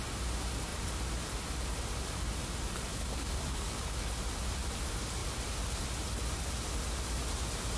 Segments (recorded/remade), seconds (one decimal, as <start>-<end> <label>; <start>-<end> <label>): 0.0-2.9 recorded; 2.9-4.1 remade; 4.1-7.8 recorded